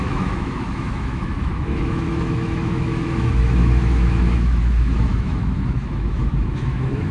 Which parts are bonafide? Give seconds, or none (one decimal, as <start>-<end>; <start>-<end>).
none